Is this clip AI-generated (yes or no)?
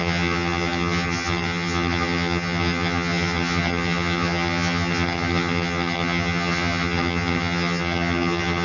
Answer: yes